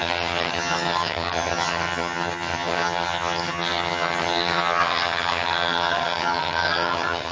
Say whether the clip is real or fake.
fake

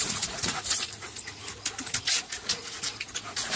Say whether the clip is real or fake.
fake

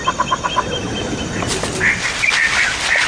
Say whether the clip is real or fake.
real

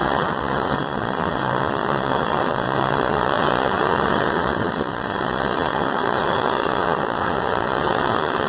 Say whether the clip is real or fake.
fake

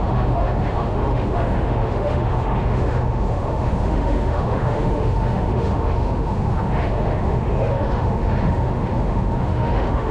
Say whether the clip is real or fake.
fake